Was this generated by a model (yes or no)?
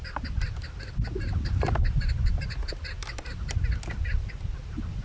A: no